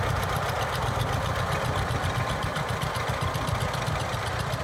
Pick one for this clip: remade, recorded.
recorded